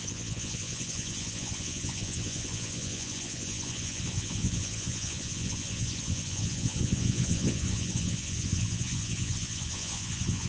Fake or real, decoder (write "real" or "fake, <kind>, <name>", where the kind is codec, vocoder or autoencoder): fake, vocoder, Vocos